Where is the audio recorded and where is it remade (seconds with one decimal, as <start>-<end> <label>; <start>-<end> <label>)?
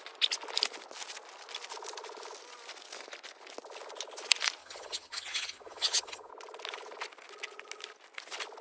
0.0-4.6 recorded; 4.6-6.3 remade; 6.3-8.6 recorded